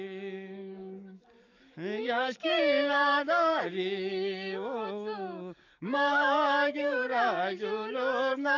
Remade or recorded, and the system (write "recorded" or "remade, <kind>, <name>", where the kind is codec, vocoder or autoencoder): remade, codec, DAC